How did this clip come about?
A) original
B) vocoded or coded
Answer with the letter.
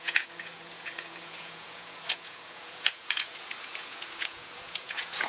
B